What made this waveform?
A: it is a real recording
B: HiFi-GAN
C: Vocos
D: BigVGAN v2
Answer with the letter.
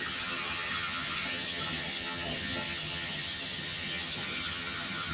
B